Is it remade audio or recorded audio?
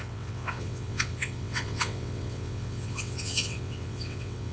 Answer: remade